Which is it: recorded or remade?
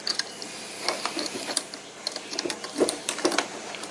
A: remade